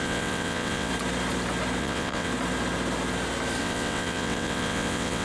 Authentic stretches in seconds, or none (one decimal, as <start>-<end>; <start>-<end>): 0.9-1.8; 2.3-3.6